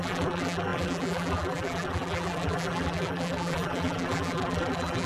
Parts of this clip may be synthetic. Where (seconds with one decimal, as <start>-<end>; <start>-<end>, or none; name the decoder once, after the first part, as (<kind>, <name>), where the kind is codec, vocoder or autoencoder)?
0.0-5.1 (vocoder, BigVGAN v2)